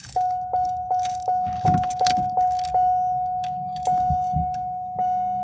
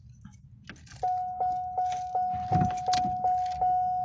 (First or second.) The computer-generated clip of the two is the first